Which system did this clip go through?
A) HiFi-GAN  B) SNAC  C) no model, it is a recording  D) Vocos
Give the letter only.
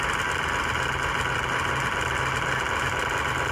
C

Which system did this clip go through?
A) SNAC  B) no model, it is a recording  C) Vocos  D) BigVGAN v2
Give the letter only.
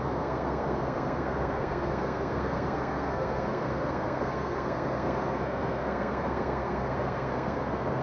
A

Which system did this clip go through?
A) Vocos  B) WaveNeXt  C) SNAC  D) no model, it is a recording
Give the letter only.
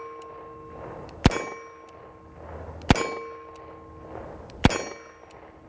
D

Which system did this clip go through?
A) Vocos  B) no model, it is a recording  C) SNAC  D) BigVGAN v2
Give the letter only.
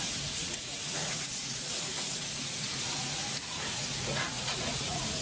A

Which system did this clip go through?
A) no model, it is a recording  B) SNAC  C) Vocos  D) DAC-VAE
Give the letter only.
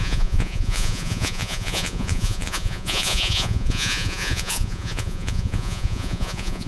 C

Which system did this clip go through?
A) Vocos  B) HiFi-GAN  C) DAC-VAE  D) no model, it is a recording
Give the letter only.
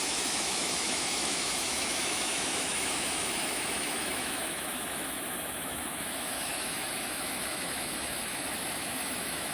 C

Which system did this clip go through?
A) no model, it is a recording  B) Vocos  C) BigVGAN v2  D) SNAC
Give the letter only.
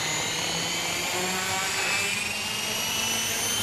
A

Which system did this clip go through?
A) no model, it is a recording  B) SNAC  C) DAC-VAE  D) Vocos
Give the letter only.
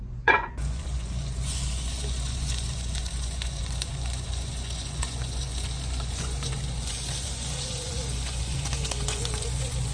D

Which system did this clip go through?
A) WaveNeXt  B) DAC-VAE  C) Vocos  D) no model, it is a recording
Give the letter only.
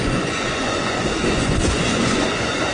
C